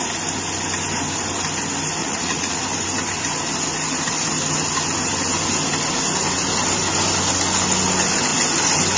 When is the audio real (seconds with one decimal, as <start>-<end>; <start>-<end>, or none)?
0.0-2.0; 2.6-9.0